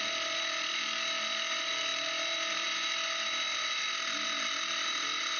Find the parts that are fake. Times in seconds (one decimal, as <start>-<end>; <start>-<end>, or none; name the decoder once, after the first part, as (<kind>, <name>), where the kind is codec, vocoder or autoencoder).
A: none